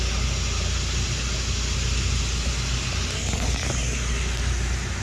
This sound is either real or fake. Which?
real